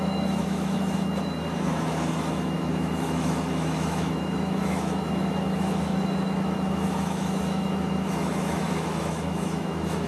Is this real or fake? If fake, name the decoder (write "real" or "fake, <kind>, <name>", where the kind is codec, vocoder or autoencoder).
fake, autoencoder, DAC-VAE